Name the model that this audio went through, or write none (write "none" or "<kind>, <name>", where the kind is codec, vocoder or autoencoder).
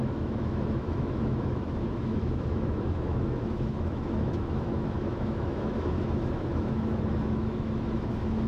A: autoencoder, DAC-VAE